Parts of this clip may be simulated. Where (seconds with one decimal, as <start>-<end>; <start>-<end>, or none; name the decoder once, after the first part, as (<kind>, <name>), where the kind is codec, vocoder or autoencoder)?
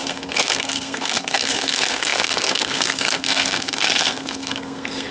0.0-5.1 (codec, SNAC)